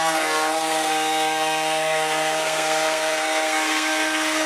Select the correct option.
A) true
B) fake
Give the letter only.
B